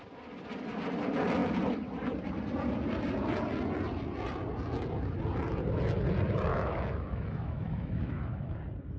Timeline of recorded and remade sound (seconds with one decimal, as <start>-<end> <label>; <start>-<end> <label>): 0.0-6.5 recorded; 6.5-8.6 remade; 8.6-9.0 recorded